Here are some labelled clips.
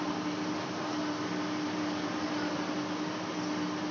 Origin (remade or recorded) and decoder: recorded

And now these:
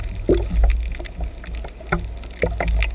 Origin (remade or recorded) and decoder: recorded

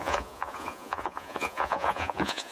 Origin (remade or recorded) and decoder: remade, vocoder, Vocos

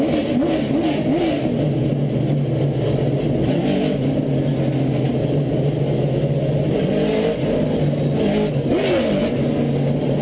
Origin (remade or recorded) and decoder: recorded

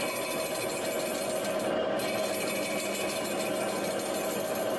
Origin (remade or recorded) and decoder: recorded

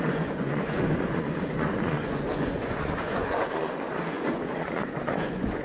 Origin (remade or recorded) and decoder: remade, vocoder, Vocos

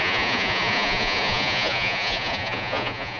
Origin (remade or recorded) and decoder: remade, vocoder, Vocos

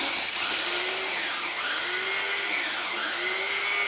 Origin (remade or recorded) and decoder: recorded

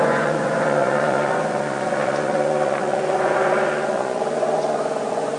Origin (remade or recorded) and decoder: remade, vocoder, Vocos